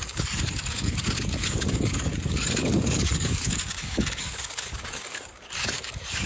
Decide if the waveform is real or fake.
fake